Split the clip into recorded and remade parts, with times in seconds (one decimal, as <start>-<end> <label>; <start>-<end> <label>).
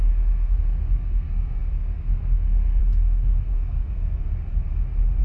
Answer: 0.0-4.2 remade; 4.2-5.2 recorded